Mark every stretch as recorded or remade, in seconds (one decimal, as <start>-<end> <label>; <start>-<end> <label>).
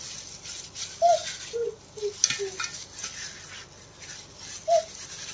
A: 0.0-5.3 recorded